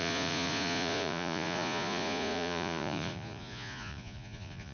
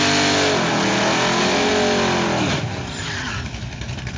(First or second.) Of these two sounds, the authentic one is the second